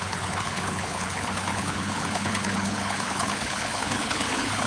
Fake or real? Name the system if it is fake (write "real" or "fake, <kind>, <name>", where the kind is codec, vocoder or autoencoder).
fake, codec, HILCodec